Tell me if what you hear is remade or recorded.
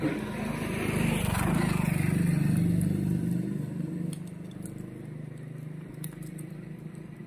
recorded